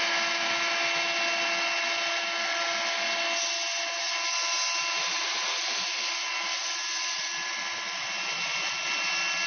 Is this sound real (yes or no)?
yes